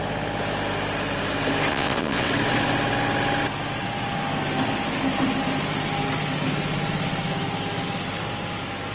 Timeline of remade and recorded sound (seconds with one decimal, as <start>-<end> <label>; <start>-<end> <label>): 0.0-1.7 recorded; 1.7-2.3 remade; 2.3-8.9 recorded